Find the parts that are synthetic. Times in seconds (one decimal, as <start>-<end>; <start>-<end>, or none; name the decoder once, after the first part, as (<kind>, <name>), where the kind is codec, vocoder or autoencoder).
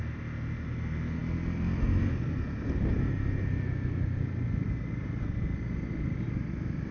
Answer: none